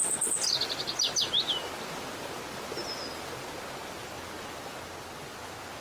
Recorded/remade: recorded